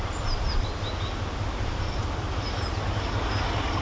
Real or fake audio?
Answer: real